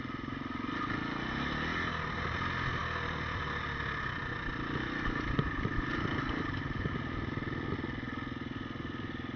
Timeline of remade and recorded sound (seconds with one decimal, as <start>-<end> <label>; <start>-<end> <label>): 0.0-9.4 recorded